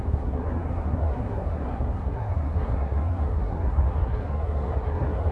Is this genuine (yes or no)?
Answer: no